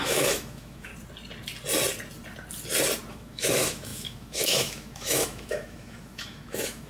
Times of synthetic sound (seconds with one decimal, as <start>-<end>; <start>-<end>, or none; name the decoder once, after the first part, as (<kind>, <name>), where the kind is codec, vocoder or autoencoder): 0.0-0.9 (autoencoder, DAC-VAE); 3.1-6.9